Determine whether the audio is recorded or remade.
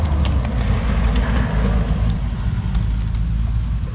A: recorded